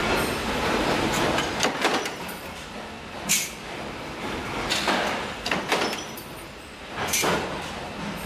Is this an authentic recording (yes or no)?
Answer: yes